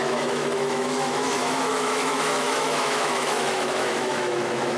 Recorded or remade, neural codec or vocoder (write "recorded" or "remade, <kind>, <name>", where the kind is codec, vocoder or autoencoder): remade, autoencoder, DAC-VAE